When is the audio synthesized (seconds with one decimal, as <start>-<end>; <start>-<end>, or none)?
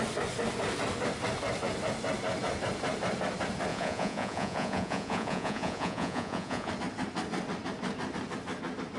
3.7-6.7